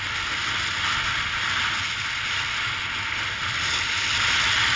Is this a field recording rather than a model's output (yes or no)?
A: yes